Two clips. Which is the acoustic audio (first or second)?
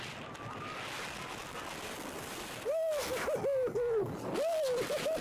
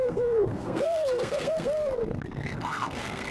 first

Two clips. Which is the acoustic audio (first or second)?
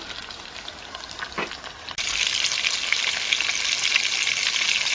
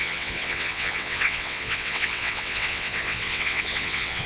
first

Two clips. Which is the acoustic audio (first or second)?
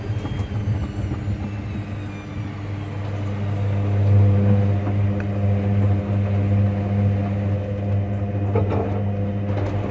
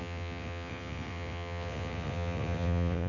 first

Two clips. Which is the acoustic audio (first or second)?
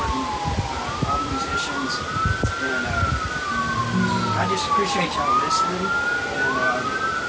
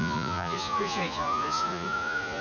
first